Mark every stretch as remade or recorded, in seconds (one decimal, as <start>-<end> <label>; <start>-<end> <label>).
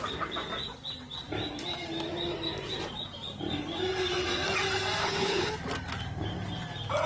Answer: 0.0-5.0 recorded; 5.0-5.5 remade; 5.5-7.1 recorded